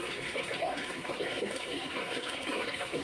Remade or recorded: remade